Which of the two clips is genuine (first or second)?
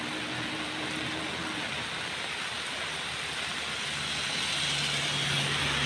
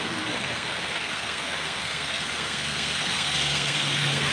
first